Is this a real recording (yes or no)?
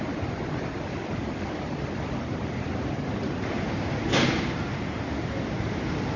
yes